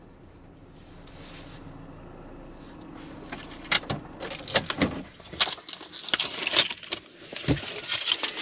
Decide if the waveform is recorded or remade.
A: recorded